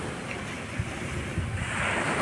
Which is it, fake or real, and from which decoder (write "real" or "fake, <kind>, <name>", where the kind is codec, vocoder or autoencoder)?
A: real